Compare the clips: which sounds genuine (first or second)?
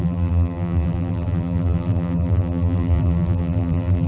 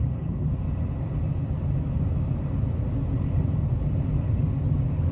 second